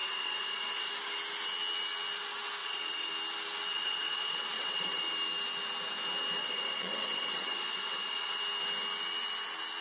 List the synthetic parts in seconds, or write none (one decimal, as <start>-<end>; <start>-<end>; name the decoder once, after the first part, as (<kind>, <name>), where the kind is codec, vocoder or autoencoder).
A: 0.0-0.9 (vocoder, WaveNeXt); 2.6-3.1; 3.7-5.0; 6.4-8.4